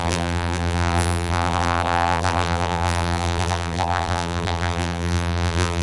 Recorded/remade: remade